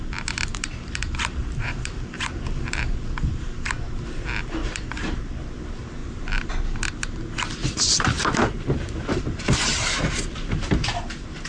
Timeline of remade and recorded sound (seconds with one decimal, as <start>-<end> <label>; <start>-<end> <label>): 0.0-0.5 recorded; 0.5-2.9 remade; 2.9-4.6 recorded; 4.6-5.3 remade; 5.3-6.0 recorded; 6.0-6.5 remade; 6.5-7.6 recorded; 7.6-10.7 remade; 10.7-11.5 recorded